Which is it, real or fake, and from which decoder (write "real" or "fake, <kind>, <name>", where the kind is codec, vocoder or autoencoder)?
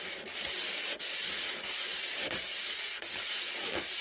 real